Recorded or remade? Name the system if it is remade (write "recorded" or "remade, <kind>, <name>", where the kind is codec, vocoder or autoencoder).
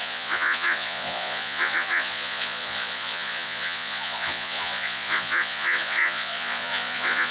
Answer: remade, vocoder, Vocos